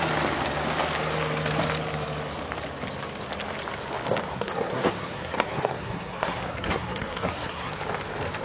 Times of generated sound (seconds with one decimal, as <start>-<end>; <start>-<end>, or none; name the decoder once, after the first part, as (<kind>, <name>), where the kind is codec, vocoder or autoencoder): 4.3-7.7 (codec, SNAC)